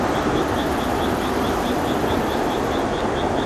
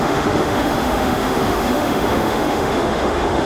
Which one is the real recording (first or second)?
first